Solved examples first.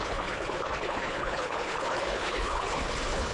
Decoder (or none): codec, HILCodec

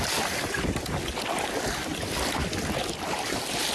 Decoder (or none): none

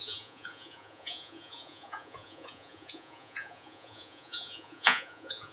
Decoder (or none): vocoder, Vocos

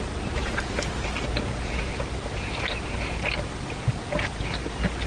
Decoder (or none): none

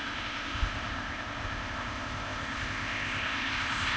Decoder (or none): codec, ZipCodec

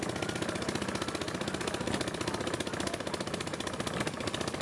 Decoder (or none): none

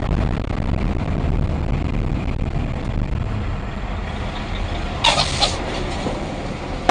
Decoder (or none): none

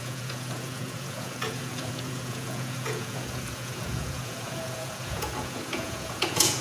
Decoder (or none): vocoder, Vocos